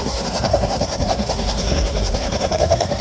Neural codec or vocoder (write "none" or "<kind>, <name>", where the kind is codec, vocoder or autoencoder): codec, SNAC